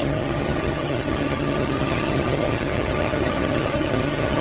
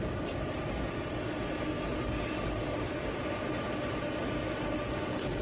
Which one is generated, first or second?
first